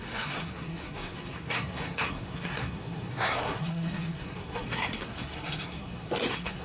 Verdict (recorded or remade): remade